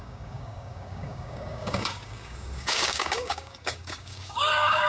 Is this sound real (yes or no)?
no